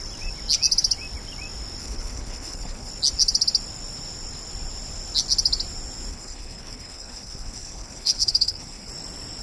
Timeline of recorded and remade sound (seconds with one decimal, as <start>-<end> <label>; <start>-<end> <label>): 0.0-1.8 recorded; 1.8-2.9 remade; 2.9-6.1 recorded; 6.1-8.9 remade; 8.9-9.4 recorded